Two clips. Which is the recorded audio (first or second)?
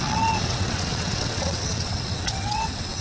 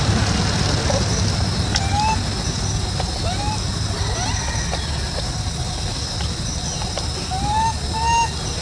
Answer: second